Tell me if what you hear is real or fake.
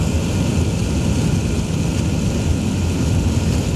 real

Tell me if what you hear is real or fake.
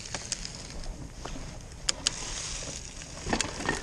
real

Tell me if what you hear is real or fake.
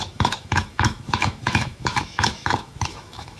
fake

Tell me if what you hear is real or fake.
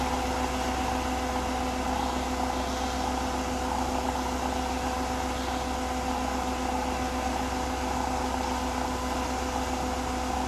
real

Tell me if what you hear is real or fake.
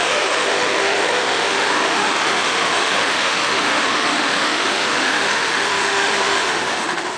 fake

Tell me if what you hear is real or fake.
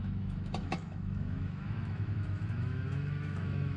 fake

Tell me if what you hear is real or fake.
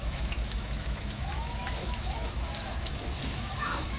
fake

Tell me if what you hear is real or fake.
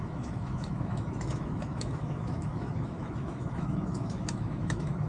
fake